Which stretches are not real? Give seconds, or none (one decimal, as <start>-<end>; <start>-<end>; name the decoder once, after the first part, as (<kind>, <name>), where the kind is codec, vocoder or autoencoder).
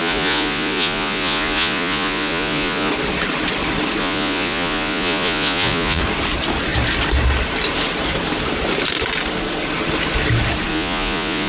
0.0-2.9 (vocoder, Vocos); 4.0-6.0; 10.7-11.5